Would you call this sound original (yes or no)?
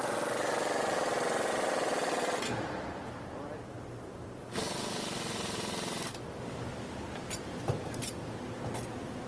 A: no